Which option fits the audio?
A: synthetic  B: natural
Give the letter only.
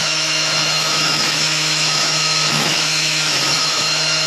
A